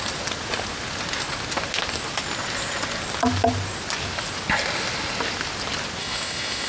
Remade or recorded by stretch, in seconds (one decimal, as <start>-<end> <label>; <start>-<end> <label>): 0.0-6.0 recorded; 6.0-6.7 remade